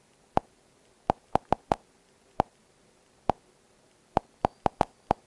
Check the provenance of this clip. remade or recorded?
recorded